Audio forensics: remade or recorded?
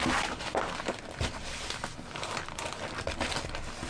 recorded